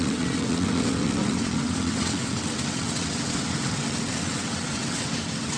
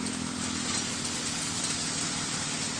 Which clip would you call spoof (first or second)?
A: first